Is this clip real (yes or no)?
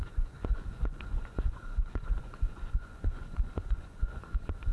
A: no